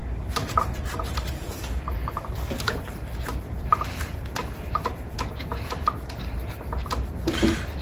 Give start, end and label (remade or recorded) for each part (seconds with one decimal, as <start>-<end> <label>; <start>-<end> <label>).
0.0-2.1 remade; 2.1-7.8 recorded